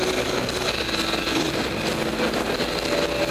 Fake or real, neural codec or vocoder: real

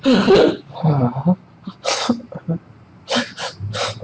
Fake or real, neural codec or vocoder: real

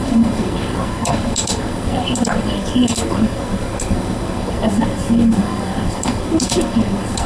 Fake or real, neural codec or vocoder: fake, codec, SNAC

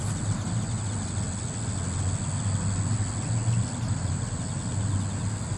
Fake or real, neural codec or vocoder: real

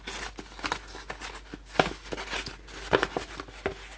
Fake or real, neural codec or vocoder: real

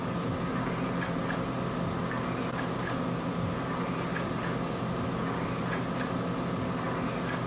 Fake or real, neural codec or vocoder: real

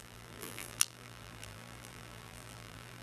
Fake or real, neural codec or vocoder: fake, vocoder, BigVGAN v2